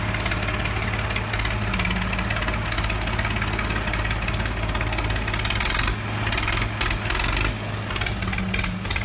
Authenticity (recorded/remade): recorded